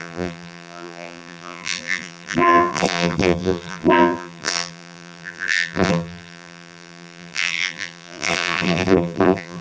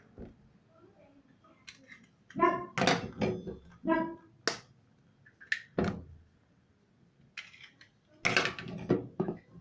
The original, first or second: second